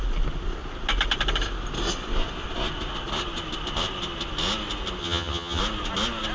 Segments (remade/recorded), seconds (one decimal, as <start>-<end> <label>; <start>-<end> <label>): 0.0-5.0 recorded; 5.0-5.6 remade; 5.6-6.3 recorded